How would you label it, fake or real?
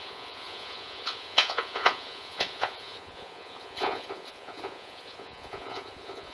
fake